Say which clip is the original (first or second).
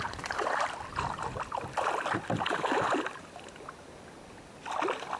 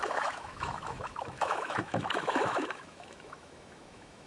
first